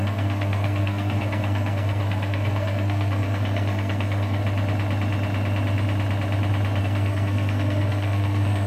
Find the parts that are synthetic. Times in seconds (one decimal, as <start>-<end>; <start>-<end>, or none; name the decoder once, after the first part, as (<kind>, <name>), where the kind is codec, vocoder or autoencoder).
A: 0.0-4.4 (codec, SNAC); 6.8-8.7